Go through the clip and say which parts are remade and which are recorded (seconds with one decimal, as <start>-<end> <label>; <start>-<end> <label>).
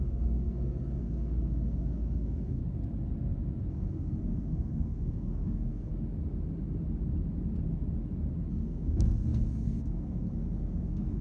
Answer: 0.0-2.6 remade; 2.6-3.7 recorded; 3.7-5.9 remade; 5.9-8.5 recorded; 8.5-11.2 remade